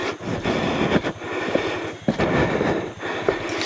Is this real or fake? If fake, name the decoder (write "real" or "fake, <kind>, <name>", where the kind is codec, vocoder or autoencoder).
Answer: real